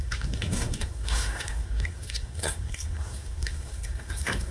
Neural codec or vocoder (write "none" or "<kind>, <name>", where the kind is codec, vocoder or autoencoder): codec, SNAC